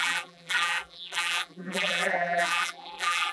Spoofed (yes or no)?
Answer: yes